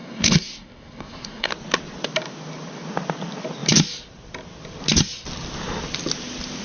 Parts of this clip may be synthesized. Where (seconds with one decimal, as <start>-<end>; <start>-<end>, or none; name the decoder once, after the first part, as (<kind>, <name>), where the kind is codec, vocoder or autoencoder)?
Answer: 0.0-1.5 (codec, SNAC)